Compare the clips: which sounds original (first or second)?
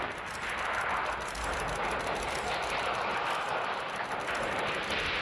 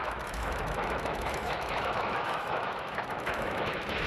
first